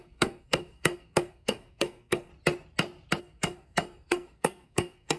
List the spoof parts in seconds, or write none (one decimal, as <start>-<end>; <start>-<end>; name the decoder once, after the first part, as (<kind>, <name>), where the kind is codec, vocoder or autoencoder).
0.0-2.3 (codec, SNAC); 3.2-5.2